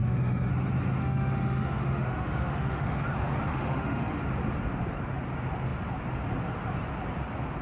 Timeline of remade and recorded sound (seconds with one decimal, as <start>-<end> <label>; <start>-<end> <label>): 0.0-0.5 remade; 0.5-1.0 recorded; 1.0-3.0 remade; 3.0-3.5 recorded; 3.5-4.2 remade; 4.2-7.6 recorded